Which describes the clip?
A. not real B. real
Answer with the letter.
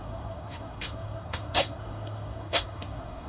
A